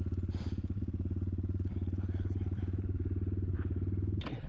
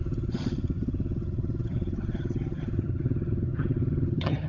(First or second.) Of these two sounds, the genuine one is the first